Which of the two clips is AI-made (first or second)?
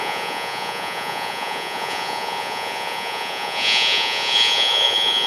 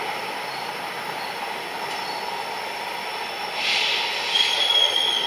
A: first